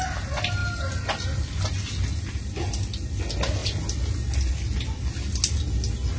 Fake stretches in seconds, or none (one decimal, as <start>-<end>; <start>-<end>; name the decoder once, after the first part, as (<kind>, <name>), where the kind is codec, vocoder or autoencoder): none